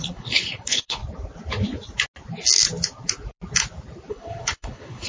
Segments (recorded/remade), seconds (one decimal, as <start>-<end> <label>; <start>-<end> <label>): 0.0-1.0 remade; 1.0-4.1 recorded; 4.1-5.1 remade